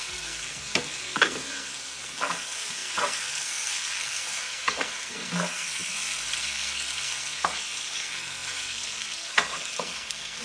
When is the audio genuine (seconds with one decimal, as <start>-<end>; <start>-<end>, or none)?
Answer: none